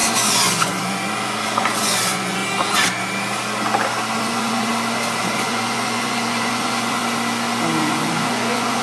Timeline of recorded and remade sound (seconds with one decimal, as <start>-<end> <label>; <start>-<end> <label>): 0.0-2.4 remade; 2.4-4.2 recorded; 4.2-4.7 remade; 4.7-5.2 recorded; 5.2-7.0 remade; 7.0-7.8 recorded; 7.8-8.8 remade